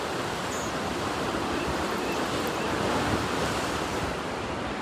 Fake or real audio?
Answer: real